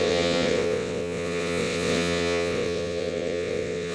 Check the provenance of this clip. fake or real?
fake